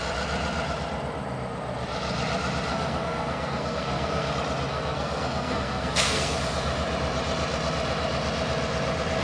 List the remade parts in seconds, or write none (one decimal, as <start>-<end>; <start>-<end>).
2.7-4.3; 4.7-6.4